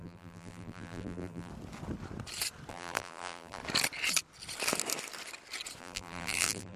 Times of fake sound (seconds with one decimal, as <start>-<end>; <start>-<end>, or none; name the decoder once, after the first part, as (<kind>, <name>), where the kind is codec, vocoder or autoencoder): 0.0-1.5 (vocoder, BigVGAN v2); 2.7-3.6; 5.8-6.8